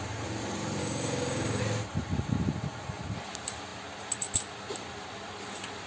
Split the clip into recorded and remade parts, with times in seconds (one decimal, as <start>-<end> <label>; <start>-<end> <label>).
0.0-0.8 recorded; 0.8-1.6 remade; 1.6-5.9 recorded